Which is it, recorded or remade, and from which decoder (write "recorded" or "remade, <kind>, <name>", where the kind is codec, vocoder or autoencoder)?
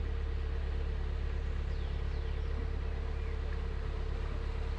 recorded